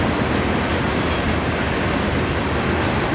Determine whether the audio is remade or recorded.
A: recorded